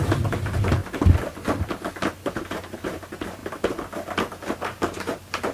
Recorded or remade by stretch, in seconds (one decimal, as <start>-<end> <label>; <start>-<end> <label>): 0.0-0.8 remade; 0.8-1.9 recorded; 1.9-3.4 remade; 3.4-4.6 recorded; 4.6-5.5 remade

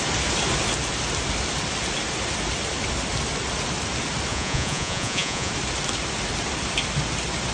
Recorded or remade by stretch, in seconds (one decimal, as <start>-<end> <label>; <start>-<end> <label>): 0.0-4.3 recorded; 4.3-5.5 remade; 5.5-7.5 recorded